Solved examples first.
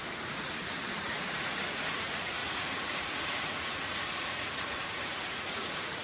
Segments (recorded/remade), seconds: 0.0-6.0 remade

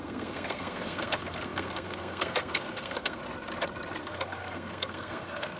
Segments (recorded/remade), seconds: 0.0-3.2 remade; 3.2-4.0 recorded; 4.0-5.6 remade

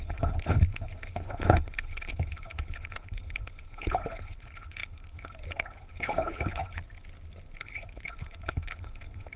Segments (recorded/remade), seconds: 0.0-6.8 remade; 6.8-7.6 recorded; 7.6-9.4 remade

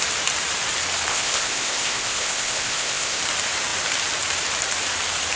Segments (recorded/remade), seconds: 0.0-1.1 recorded; 1.1-3.2 remade; 3.2-5.4 recorded

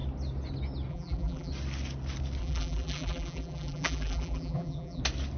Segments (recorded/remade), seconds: 0.0-0.9 recorded; 0.9-1.5 remade; 1.5-2.4 recorded; 2.4-5.0 remade; 5.0-5.4 recorded

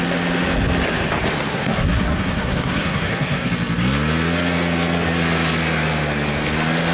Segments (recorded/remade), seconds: 0.0-1.5 recorded; 1.5-3.5 remade; 3.5-6.9 recorded

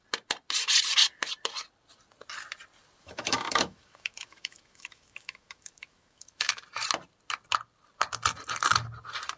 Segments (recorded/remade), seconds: 0.0-3.0 recorded; 3.0-6.6 remade; 6.6-9.4 recorded